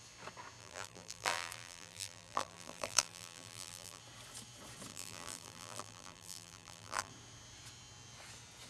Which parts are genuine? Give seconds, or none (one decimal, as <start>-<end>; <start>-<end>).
0.0-0.6; 4.0-4.9; 7.1-8.7